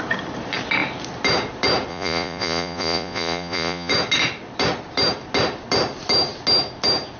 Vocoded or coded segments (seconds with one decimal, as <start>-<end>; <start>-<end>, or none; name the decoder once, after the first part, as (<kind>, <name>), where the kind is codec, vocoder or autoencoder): 1.9-3.9 (vocoder, Vocos)